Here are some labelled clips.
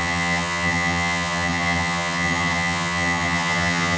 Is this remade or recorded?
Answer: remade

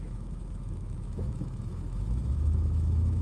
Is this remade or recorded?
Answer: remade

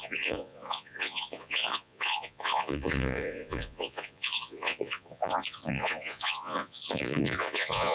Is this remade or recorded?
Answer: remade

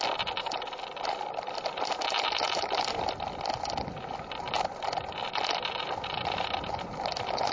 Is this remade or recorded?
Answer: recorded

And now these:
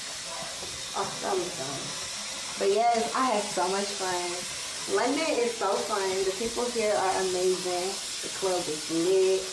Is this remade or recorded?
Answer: recorded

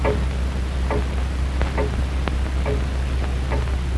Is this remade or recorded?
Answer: recorded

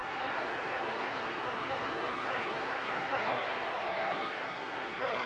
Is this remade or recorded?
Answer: remade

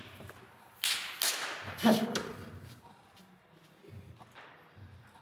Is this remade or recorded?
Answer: recorded